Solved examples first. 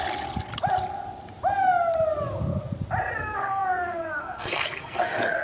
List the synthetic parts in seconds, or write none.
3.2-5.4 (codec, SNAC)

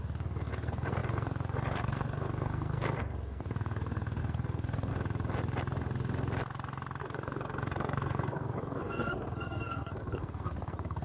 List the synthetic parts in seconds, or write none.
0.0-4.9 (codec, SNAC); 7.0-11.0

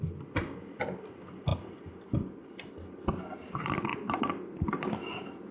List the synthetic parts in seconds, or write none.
none

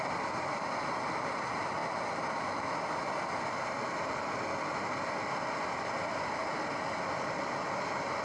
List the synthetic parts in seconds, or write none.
none

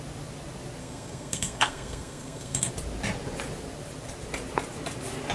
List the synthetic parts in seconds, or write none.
0.8-2.7 (codec, SNAC)

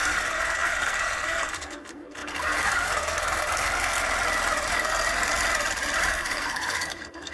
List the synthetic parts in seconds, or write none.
0.0-4.0 (codec, SNAC); 4.7-5.3; 6.1-7.3